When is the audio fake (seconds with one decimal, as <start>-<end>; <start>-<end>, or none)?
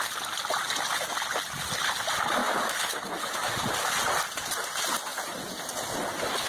2.4-3.3